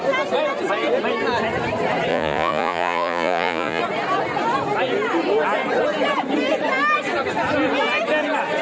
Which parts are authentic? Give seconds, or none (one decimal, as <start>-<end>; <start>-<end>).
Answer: 0.0-2.1; 3.8-8.6